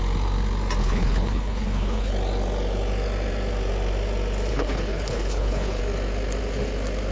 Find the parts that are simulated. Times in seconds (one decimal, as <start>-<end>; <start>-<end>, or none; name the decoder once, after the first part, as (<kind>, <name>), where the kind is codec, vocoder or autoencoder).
0.8-2.1 (codec, HILCodec); 4.5-5.8